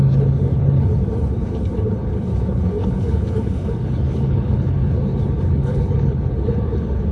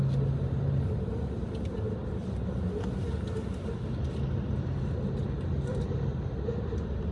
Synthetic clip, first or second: first